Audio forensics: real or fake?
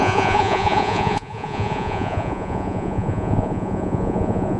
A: fake